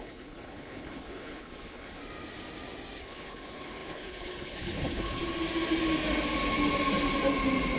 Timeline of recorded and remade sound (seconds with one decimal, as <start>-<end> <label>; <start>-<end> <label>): 0.0-2.0 remade; 2.0-3.0 recorded; 3.0-5.2 remade; 5.2-7.8 recorded